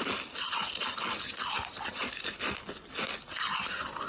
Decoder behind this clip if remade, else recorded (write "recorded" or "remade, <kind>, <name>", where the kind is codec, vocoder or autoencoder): recorded